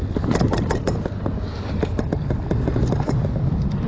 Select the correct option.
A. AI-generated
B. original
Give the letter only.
B